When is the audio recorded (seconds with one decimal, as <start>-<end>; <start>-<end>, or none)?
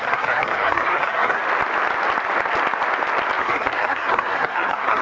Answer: 1.4-3.4